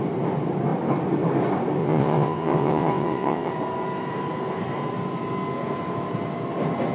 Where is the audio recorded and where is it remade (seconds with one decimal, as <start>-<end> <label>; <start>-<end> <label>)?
0.0-1.8 recorded; 1.8-3.5 remade; 3.5-6.9 recorded